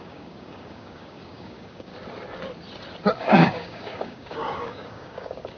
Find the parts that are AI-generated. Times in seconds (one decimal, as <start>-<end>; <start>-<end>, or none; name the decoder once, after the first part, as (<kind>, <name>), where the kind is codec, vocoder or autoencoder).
0.0-1.9 (codec, DAC); 3.2-5.6

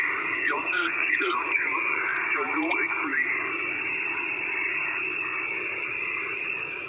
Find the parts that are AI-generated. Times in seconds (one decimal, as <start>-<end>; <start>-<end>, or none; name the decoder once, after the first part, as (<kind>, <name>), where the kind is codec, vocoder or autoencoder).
0.0-2.1 (vocoder, Vocos); 2.7-3.1

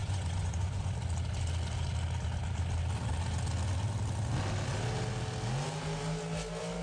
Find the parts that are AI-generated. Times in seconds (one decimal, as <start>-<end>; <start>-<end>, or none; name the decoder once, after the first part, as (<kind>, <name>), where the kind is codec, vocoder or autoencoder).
0.0-0.9 (vocoder, Vocos)

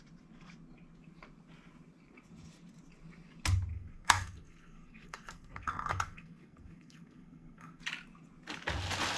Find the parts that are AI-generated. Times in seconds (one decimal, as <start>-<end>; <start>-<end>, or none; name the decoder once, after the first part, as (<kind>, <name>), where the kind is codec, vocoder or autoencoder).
3.7-7.8 (codec, SNAC)

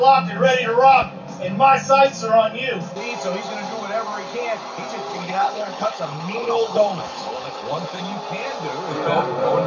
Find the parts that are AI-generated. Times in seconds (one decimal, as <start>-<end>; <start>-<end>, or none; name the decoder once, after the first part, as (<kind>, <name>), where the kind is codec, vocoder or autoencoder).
5.1-8.0 (codec, HILCodec)

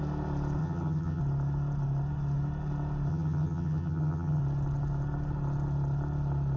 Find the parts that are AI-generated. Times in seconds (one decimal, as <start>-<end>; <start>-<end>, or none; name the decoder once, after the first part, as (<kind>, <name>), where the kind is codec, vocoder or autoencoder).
0.6-1.2 (vocoder, HiFi-GAN); 3.1-4.4

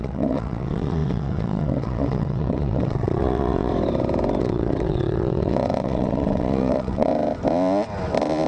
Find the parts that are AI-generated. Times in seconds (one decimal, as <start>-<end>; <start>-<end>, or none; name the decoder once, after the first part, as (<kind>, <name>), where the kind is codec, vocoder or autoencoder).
0.0-3.7 (vocoder, WaveNeXt); 4.4-7.1